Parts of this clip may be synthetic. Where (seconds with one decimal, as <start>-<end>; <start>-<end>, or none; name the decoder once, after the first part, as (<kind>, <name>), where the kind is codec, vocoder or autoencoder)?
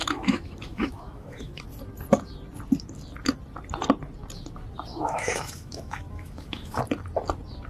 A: 0.0-1.6 (autoencoder, DAC-VAE); 4.9-6.8